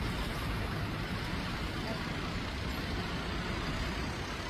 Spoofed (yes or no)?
no